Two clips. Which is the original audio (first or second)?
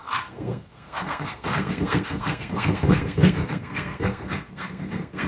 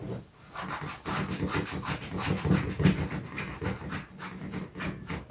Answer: second